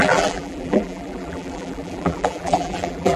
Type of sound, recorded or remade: remade